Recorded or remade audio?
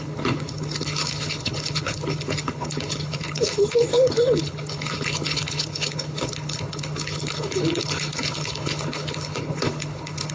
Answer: remade